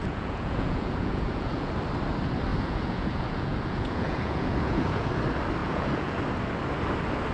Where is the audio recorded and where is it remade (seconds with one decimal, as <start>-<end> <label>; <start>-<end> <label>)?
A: 0.0-1.7 remade; 1.7-2.5 recorded; 2.5-5.1 remade; 5.1-5.6 recorded; 5.6-6.2 remade; 6.2-7.3 recorded